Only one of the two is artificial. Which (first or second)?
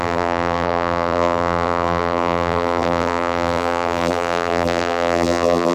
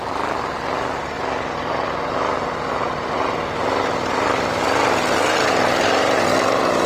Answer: first